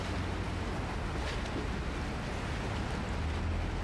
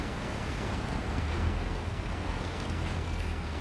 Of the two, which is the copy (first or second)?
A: second